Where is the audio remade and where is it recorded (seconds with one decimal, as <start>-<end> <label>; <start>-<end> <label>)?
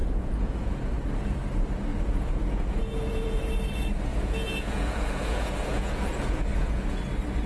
0.0-0.9 remade; 0.9-1.9 recorded; 1.9-3.4 remade; 3.4-4.1 recorded; 4.1-7.0 remade; 7.0-7.5 recorded